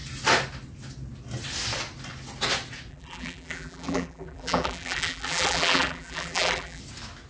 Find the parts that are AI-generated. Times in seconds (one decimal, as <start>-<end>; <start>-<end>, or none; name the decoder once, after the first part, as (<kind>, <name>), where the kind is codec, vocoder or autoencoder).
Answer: 2.9-6.8 (vocoder, BigVGAN v2)